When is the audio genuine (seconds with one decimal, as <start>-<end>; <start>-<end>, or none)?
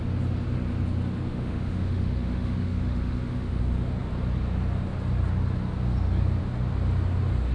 0.0-1.3; 3.6-7.5